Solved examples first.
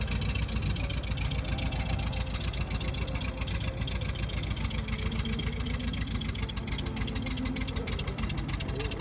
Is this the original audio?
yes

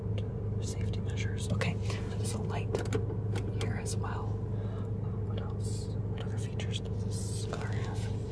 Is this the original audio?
yes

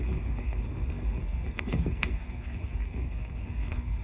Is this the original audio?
no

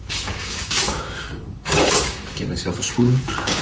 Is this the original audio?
no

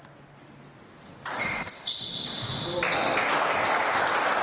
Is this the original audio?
yes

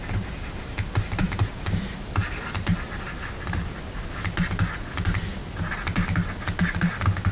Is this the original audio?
yes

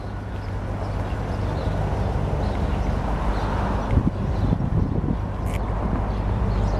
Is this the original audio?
yes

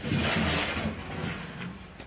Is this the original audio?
yes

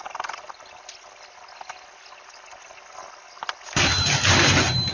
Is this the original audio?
yes